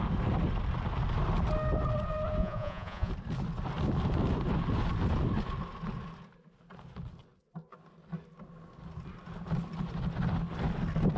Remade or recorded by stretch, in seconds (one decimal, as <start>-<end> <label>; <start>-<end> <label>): 0.0-2.4 recorded; 2.4-3.1 remade; 3.1-11.2 recorded